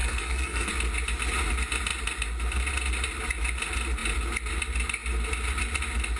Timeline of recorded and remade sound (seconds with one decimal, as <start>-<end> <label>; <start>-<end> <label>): 0.0-0.7 remade; 0.7-6.2 recorded